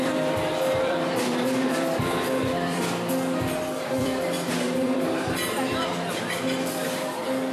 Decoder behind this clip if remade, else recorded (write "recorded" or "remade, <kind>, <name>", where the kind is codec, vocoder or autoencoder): remade, vocoder, BigVGAN v2